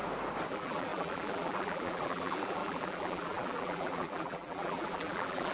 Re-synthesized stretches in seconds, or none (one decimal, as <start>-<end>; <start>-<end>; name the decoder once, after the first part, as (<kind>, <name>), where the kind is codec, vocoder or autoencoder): 0.5-5.5 (vocoder, BigVGAN v2)